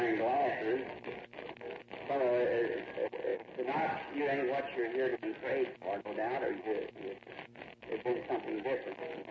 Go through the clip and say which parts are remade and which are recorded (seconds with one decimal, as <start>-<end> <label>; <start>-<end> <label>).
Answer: 0.0-9.3 recorded